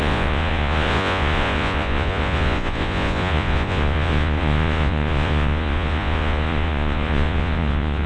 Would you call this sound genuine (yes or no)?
no